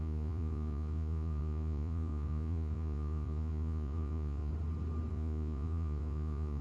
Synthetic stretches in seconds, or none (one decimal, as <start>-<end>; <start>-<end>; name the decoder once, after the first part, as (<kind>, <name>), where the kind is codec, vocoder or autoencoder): 0.0-4.5 (vocoder, Vocos); 5.1-6.6